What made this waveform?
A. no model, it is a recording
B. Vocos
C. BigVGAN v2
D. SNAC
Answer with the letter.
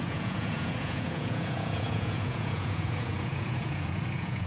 B